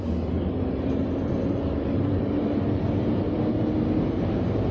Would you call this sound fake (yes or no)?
yes